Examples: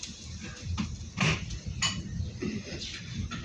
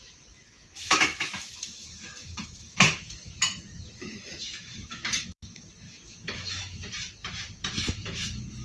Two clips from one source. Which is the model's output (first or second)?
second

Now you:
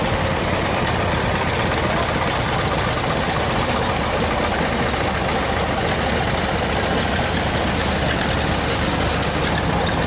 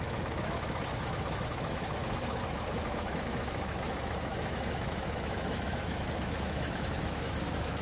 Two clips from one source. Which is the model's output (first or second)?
second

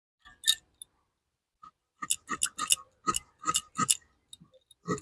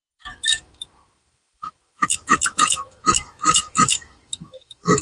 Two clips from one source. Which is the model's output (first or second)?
second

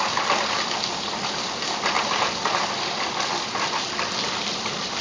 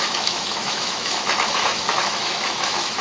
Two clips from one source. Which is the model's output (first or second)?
second